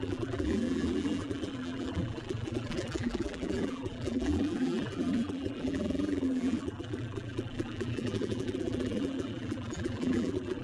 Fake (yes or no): yes